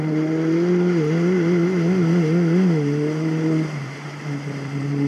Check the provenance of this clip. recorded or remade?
recorded